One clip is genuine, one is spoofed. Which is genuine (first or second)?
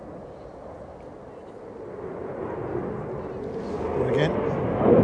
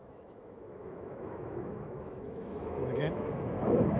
first